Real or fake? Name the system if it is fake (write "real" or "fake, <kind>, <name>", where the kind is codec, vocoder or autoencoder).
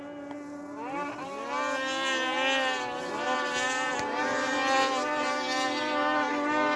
real